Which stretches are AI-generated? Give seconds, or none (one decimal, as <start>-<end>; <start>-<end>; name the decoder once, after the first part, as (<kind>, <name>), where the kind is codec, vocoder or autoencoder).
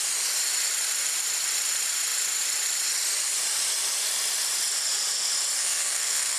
5.6-6.4 (codec, SNAC)